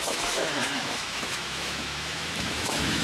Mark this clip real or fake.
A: fake